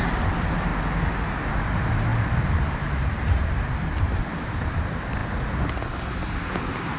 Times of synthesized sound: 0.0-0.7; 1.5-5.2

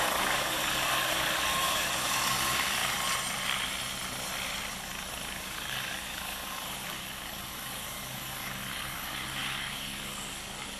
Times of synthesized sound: 0.0-2.8; 5.3-10.8